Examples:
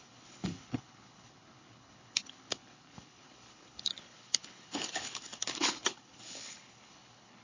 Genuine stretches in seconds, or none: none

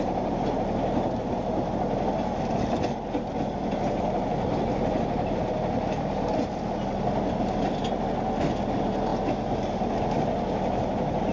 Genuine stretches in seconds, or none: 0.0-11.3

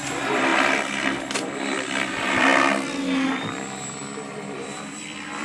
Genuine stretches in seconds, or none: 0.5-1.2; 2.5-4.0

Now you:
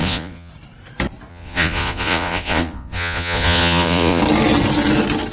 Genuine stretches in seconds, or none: 0.5-1.3; 4.2-5.3

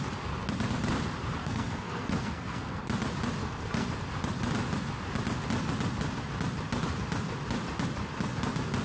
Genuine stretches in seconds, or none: 0.0-1.4; 2.8-3.4; 3.9-8.8

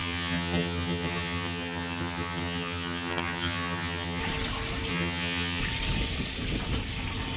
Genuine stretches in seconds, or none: 4.2-4.9; 5.6-7.4